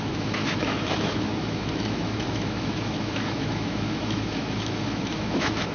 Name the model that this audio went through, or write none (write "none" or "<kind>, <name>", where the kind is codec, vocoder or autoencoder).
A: autoencoder, DAC-VAE